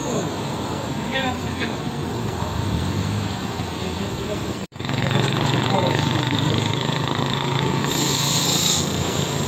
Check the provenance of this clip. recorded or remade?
remade